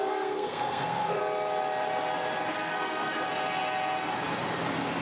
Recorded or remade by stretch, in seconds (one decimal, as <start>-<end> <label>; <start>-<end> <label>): 0.0-1.2 remade; 1.2-2.5 recorded; 2.5-3.2 remade; 3.2-5.0 recorded